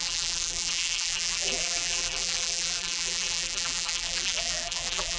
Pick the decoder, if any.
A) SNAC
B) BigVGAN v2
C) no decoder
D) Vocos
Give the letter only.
B